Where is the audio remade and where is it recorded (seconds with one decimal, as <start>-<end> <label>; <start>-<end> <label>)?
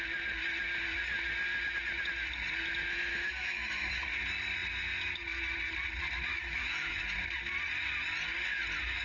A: 0.0-3.1 recorded; 3.1-3.9 remade; 3.9-6.3 recorded; 6.3-7.0 remade; 7.0-9.0 recorded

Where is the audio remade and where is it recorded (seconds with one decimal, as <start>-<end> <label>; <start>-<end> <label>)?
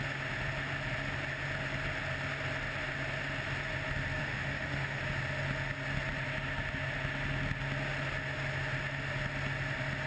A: 0.0-4.2 recorded; 4.2-5.0 remade; 5.0-10.1 recorded